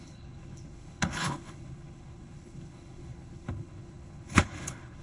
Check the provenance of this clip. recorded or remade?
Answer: remade